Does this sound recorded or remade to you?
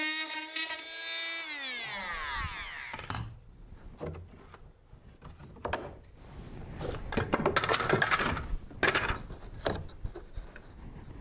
recorded